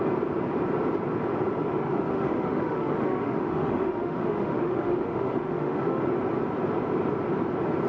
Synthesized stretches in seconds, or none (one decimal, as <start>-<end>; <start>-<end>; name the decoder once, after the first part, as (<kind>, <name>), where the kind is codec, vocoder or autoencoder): 1.7-6.0 (autoencoder, DAC-VAE)